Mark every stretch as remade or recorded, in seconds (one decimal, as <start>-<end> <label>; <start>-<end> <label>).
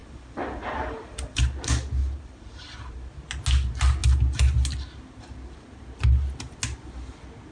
0.0-1.4 remade; 1.4-2.0 recorded; 2.0-3.1 remade; 3.1-7.5 recorded